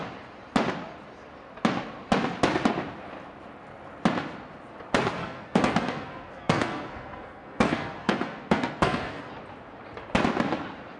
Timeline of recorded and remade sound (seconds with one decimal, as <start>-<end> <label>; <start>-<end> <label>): 0.0-5.2 recorded; 5.2-9.3 remade; 9.3-11.0 recorded